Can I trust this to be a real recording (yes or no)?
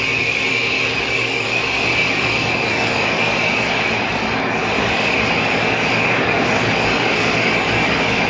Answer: no